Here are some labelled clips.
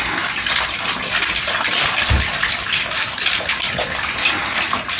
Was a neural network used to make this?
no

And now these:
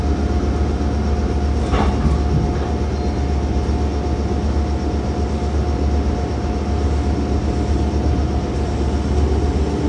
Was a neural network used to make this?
no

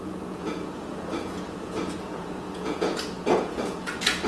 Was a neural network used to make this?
yes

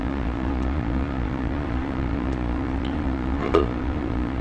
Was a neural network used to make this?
yes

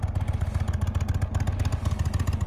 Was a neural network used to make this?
no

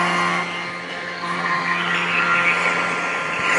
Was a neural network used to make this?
no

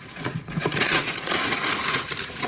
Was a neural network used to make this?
yes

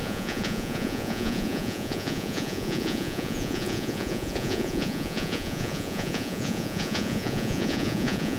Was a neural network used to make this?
yes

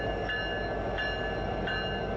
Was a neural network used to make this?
no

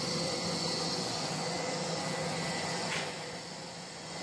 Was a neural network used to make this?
yes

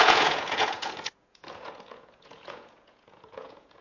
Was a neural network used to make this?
yes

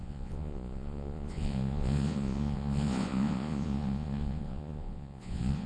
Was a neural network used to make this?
yes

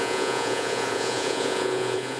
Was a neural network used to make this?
yes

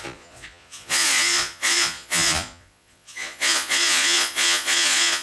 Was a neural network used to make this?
yes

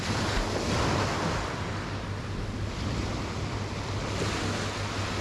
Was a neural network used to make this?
no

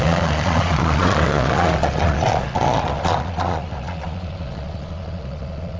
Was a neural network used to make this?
yes